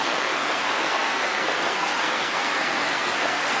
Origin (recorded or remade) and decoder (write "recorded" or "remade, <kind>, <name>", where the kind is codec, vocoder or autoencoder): remade, codec, SNAC